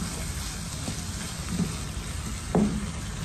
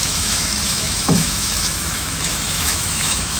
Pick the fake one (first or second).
second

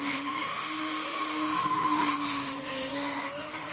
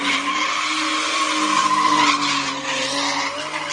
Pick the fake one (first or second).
first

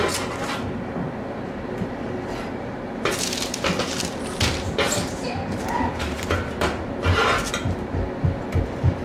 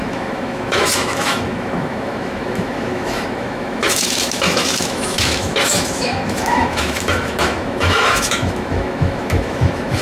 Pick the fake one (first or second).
second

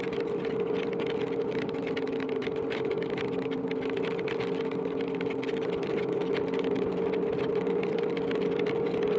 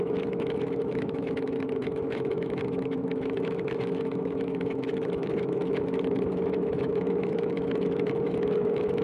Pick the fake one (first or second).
second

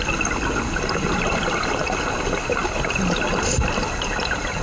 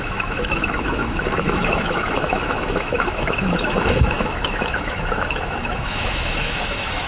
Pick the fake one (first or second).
second